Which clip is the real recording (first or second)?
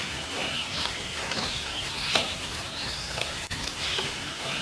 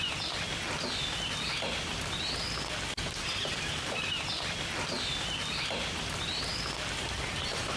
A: second